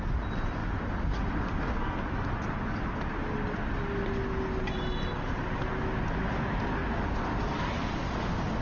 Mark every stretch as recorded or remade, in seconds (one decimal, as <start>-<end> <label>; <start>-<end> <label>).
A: 0.0-8.6 recorded